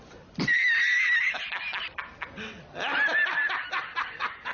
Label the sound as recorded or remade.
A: recorded